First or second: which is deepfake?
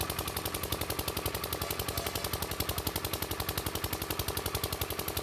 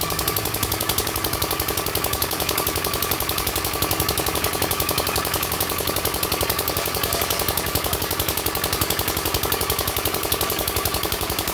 second